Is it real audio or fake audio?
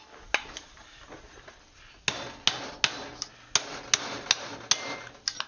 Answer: real